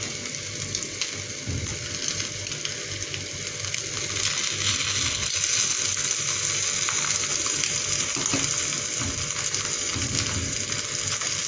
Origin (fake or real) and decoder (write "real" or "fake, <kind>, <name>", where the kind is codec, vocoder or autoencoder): real